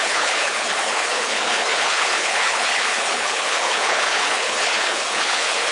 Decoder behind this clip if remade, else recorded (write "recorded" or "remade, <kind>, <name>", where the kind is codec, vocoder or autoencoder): remade, codec, HILCodec